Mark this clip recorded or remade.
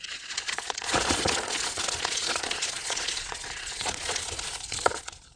remade